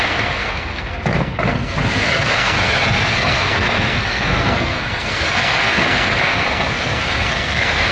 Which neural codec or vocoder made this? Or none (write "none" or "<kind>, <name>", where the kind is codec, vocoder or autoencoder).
codec, SNAC